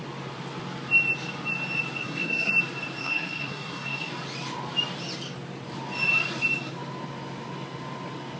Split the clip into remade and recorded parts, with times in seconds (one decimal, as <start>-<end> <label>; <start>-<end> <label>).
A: 0.0-2.0 recorded; 2.0-2.5 remade; 2.5-3.0 recorded; 3.0-4.1 remade; 4.1-8.4 recorded